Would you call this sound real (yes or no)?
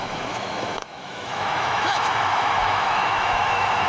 no